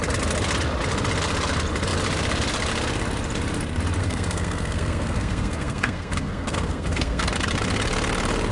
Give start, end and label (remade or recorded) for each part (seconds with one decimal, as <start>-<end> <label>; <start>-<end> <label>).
0.0-4.0 recorded; 4.0-7.3 remade; 7.3-8.5 recorded